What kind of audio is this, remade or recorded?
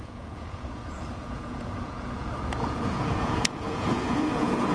remade